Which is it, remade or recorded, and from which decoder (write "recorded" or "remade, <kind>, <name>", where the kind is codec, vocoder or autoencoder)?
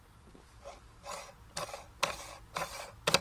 recorded